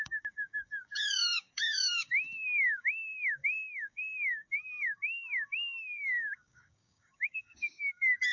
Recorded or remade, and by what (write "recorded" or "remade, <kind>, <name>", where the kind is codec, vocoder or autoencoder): remade, codec, DAC